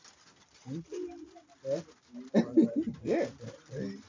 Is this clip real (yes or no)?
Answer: yes